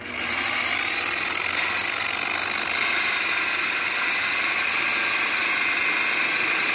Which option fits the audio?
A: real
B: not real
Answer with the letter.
A